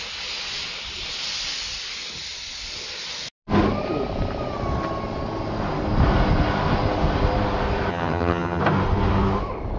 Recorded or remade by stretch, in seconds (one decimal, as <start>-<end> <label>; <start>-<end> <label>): 0.0-7.9 recorded; 7.9-8.6 remade; 8.6-9.8 recorded